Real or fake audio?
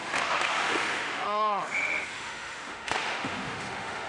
fake